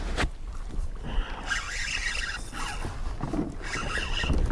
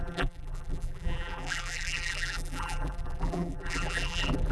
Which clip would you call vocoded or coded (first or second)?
second